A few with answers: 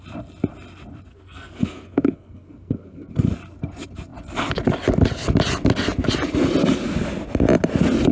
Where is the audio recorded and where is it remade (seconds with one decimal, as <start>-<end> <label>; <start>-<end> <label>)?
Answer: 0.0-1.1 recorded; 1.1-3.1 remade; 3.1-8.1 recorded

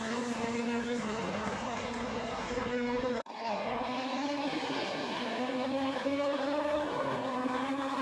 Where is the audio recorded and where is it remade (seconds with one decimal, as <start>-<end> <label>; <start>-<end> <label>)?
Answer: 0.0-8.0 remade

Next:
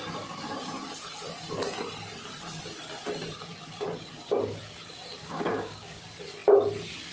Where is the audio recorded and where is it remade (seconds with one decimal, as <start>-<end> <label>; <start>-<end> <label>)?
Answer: 0.0-5.2 recorded; 5.2-6.0 remade; 6.0-7.1 recorded

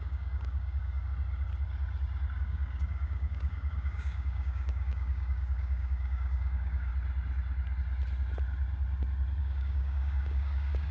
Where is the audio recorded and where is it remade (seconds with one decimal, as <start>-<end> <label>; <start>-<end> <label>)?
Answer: 0.0-1.1 remade; 1.1-2.4 recorded; 2.4-6.9 remade; 6.9-9.4 recorded; 9.4-10.9 remade

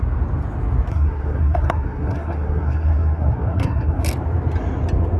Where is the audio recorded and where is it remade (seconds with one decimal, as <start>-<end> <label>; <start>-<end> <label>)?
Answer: 0.0-0.9 recorded; 0.9-4.0 remade; 4.0-5.2 recorded

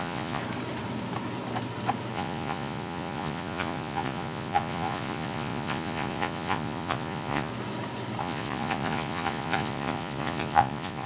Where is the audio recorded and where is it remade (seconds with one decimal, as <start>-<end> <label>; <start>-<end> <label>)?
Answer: 0.0-0.4 remade; 0.4-2.1 recorded; 2.1-7.5 remade; 7.5-8.2 recorded; 8.2-11.1 remade

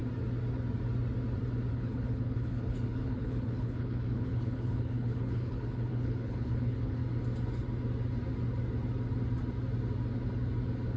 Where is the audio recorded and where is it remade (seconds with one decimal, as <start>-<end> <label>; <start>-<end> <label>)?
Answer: 0.0-1.7 recorded; 1.7-7.0 remade; 7.0-11.0 recorded